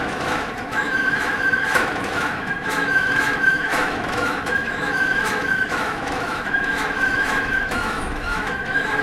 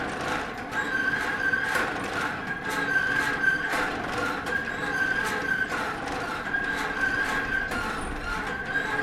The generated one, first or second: first